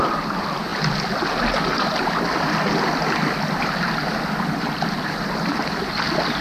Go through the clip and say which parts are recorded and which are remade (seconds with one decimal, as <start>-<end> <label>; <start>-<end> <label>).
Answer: 0.0-6.4 recorded